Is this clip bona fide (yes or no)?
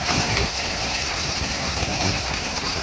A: no